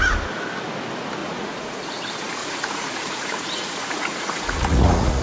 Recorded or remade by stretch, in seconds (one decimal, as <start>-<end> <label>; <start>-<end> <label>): 0.0-1.2 recorded; 1.2-2.0 remade; 2.0-2.4 recorded; 2.4-5.2 remade